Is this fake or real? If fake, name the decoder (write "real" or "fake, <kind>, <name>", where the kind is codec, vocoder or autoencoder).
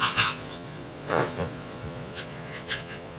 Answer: fake, vocoder, Vocos